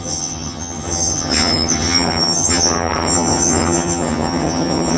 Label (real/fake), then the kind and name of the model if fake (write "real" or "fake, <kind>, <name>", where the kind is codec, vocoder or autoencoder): fake, vocoder, HiFi-GAN